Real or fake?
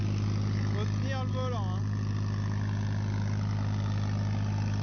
real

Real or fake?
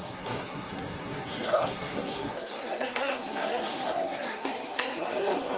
fake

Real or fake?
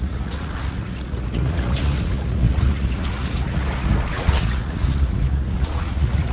fake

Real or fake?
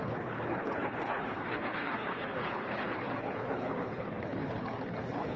fake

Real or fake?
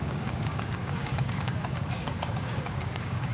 fake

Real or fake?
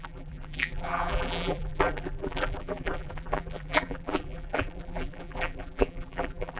fake